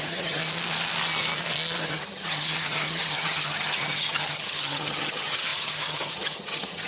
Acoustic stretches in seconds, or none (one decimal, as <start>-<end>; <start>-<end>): 0.4-1.8